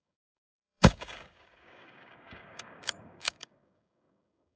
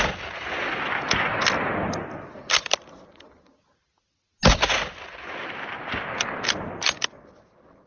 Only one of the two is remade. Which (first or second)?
first